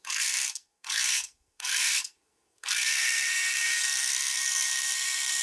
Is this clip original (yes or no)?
no